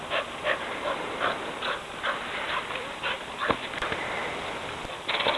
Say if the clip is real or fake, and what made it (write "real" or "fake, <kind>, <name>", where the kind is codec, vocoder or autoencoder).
real